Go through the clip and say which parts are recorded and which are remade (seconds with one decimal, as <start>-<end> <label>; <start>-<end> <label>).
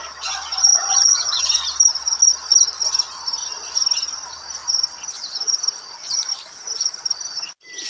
0.0-0.7 recorded; 0.7-1.4 remade; 1.4-7.9 recorded